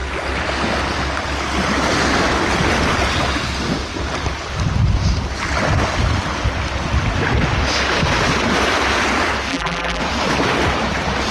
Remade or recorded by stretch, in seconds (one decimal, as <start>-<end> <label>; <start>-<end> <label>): 0.0-9.5 recorded; 9.5-10.0 remade; 10.0-11.3 recorded

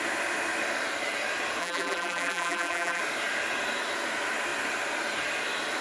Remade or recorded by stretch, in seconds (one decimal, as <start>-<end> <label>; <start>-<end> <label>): 0.0-1.6 recorded; 1.6-3.0 remade; 3.0-5.8 recorded

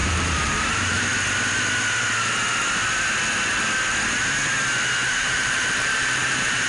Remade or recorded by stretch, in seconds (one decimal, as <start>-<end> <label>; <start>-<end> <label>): 0.0-1.1 remade; 1.1-5.1 recorded; 5.1-6.7 remade

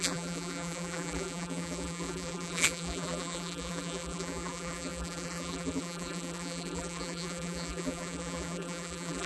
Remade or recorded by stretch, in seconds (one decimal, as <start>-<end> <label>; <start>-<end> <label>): 0.0-9.3 remade

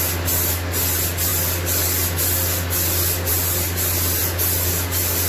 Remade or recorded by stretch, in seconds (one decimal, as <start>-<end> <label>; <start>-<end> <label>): 0.0-5.3 recorded